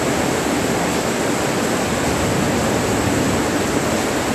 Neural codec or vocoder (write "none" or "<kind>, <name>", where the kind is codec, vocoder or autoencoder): none